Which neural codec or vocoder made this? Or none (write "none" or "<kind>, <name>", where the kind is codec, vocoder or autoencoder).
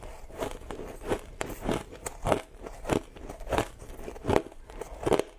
none